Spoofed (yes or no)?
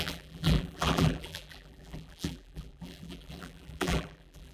yes